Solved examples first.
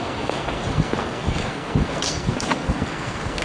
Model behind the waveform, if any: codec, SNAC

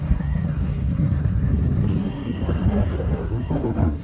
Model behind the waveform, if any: codec, SNAC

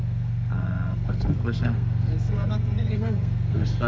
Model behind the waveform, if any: codec, SNAC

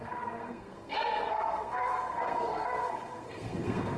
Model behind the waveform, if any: codec, SNAC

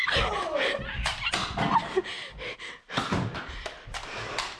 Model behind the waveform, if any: none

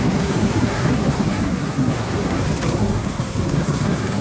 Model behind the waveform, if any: codec, SNAC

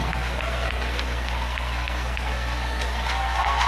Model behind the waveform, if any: codec, SNAC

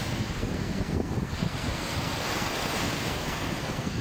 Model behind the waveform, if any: codec, SNAC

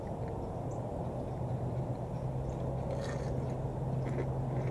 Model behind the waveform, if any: none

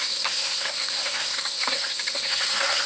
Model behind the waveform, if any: codec, SNAC